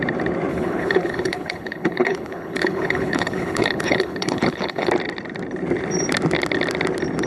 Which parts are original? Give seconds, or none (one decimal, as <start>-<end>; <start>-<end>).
0.0-0.5; 4.9-7.3